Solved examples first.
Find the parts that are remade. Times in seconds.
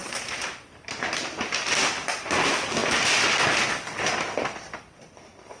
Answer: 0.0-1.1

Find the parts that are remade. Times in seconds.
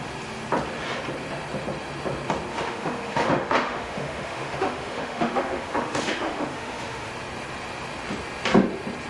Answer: 2.5-7.1